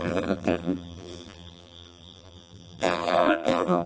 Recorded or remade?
remade